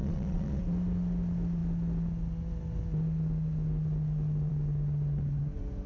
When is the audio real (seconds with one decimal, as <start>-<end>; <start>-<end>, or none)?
0.6-5.9